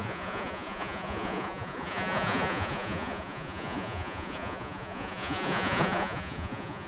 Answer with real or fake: fake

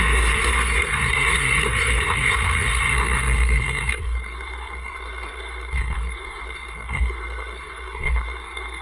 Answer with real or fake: fake